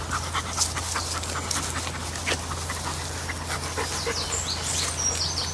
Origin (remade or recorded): recorded